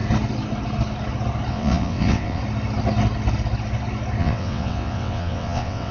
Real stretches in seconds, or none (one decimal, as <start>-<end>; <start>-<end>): 0.0-1.5; 2.4-4.2